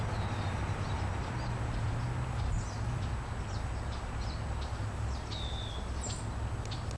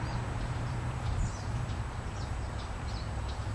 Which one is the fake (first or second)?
second